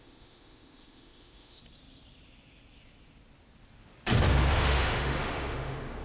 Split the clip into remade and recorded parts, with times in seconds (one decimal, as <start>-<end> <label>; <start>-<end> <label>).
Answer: 0.0-1.6 remade; 1.6-4.5 recorded; 4.5-6.0 remade